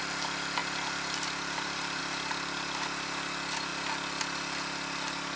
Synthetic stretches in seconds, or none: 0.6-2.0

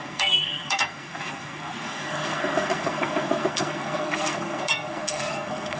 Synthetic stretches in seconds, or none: 0.0-5.8

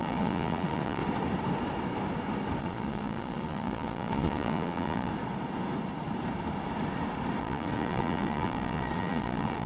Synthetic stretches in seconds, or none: 0.0-1.0; 2.6-5.1; 7.4-9.7

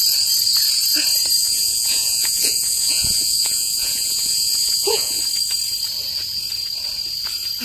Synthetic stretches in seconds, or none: 1.4-5.2

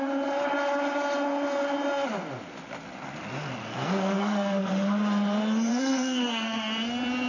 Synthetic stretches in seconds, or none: 3.6-4.7; 5.7-6.7

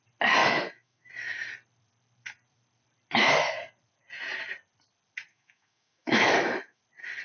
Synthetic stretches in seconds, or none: 0.4-1.1; 5.3-6.8

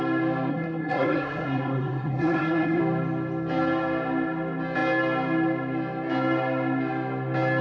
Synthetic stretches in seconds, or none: 0.5-2.8